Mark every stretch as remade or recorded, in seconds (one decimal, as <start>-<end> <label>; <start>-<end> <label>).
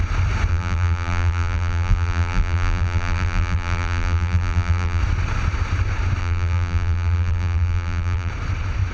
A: 0.0-0.5 recorded; 0.5-5.0 remade; 5.0-6.2 recorded; 6.2-8.3 remade; 8.3-8.9 recorded